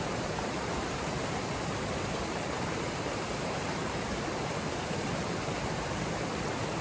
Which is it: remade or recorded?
remade